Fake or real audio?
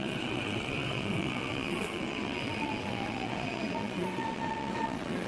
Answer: fake